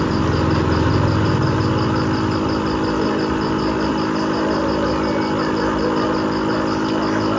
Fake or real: real